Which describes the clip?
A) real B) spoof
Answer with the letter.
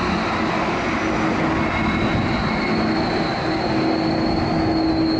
A